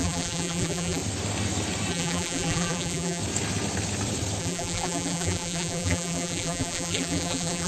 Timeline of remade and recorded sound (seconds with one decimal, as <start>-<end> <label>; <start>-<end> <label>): 0.0-1.0 remade; 1.0-1.9 recorded; 1.9-3.2 remade; 3.2-4.4 recorded; 4.4-7.7 remade